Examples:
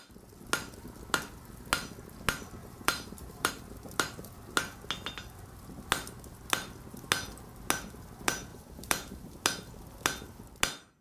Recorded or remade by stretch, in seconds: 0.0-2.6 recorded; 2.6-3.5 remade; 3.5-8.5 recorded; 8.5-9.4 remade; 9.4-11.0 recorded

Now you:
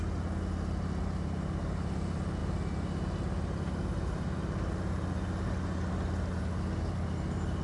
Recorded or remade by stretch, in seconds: 0.0-7.6 recorded

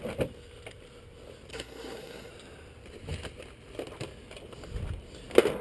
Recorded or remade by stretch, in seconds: 0.0-1.5 recorded; 1.5-2.3 remade; 2.3-5.6 recorded

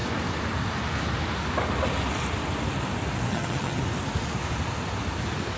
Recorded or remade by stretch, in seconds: 0.0-3.3 recorded; 3.3-3.8 remade; 3.8-5.6 recorded

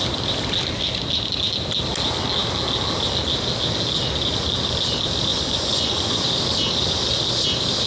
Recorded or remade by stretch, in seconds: 0.0-5.3 recorded; 5.3-6.2 remade; 6.2-7.9 recorded

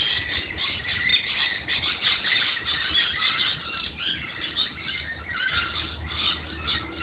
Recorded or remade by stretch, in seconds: 0.0-7.0 recorded

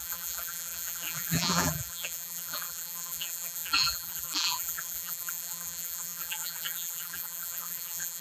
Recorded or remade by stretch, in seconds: 0.0-8.2 remade

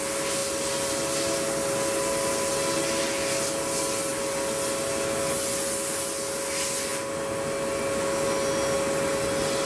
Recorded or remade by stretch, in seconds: 0.0-9.7 recorded